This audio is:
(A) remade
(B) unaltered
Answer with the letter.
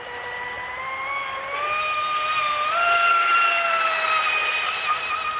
B